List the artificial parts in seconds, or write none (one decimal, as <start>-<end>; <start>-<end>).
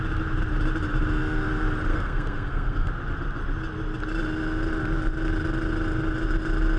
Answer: 1.9-2.9